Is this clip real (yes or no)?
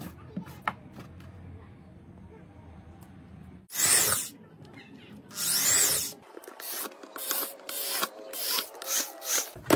yes